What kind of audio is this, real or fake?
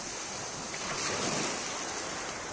real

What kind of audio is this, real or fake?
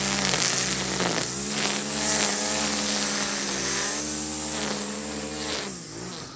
real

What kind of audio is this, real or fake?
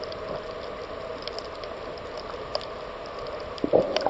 real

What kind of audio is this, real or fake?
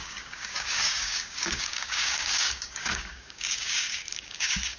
fake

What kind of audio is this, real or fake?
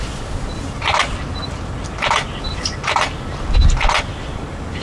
real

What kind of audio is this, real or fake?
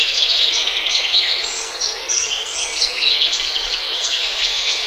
fake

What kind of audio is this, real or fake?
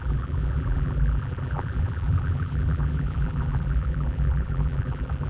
fake